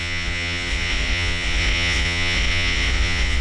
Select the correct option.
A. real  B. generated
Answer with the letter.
B